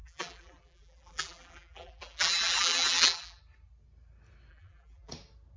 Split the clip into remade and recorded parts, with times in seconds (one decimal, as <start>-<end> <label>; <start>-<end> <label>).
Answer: 0.0-3.4 remade; 3.4-4.5 recorded; 4.5-5.1 remade; 5.1-5.6 recorded